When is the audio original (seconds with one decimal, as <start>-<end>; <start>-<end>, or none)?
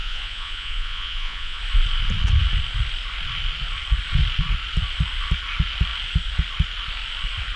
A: 1.6-7.6